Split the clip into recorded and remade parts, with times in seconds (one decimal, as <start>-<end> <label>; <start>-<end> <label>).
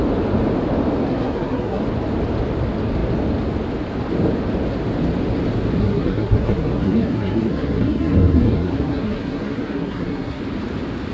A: 0.0-1.1 recorded; 1.1-1.8 remade; 1.8-5.8 recorded; 5.8-10.4 remade; 10.4-11.1 recorded